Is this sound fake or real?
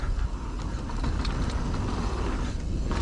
real